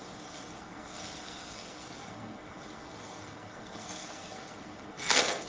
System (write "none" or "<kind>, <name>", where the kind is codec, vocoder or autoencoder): codec, SNAC